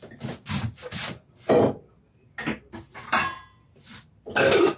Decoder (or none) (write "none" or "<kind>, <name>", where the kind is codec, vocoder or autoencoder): none